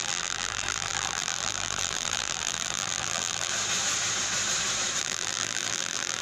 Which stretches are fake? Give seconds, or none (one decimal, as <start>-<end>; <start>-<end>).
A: 0.0-3.5; 5.0-6.2